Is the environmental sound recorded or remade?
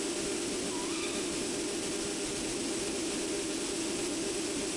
recorded